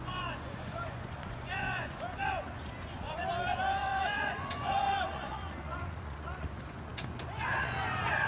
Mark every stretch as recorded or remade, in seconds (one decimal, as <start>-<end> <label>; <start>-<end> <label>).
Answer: 0.0-8.3 remade